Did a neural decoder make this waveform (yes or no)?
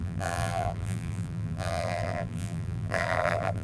yes